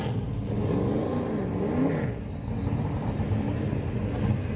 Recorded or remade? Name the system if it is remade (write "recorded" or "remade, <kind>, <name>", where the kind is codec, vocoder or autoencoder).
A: recorded